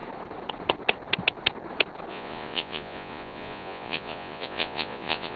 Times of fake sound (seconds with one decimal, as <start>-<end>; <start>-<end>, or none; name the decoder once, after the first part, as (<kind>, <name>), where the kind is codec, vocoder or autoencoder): 2.1-5.4 (vocoder, Vocos)